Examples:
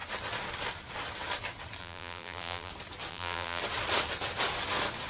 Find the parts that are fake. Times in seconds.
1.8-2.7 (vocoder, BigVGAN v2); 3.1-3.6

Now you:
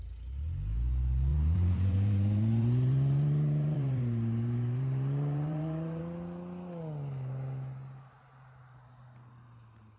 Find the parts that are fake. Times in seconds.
1.3-6.0 (vocoder, BigVGAN v2)

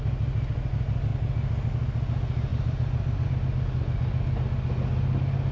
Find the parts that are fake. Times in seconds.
2.5-3.3 (vocoder, BigVGAN v2)